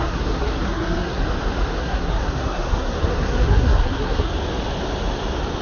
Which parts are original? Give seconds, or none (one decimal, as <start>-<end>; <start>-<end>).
1.2-1.8; 4.3-5.6